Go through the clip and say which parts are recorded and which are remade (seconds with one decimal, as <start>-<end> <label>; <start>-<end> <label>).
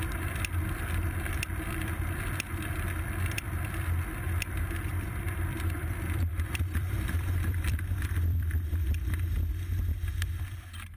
0.0-4.9 recorded; 4.9-8.9 remade; 8.9-11.0 recorded